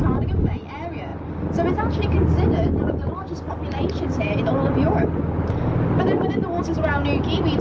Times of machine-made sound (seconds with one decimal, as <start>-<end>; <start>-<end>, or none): none